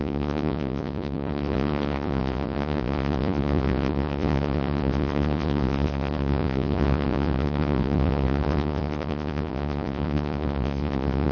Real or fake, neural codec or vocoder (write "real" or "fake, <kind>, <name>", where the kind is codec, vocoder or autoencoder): fake, vocoder, Vocos